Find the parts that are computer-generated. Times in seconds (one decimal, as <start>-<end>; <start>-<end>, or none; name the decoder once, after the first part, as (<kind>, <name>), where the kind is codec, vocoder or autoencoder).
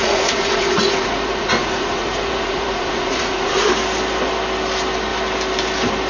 0.0-3.7 (vocoder, Vocos)